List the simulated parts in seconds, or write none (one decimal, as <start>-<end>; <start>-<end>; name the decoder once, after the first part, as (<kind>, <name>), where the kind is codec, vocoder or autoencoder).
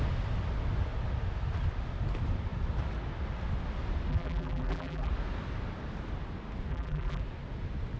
4.1-5.1 (vocoder, BigVGAN v2); 6.7-7.2